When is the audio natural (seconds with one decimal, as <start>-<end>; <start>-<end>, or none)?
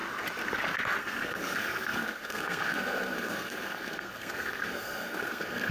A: 0.0-1.0